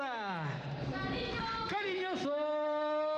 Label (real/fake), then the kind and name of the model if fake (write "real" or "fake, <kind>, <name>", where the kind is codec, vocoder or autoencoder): real